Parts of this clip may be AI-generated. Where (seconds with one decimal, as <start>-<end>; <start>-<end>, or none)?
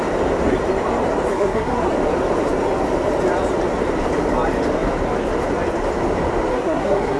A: 1.3-1.9; 6.5-7.2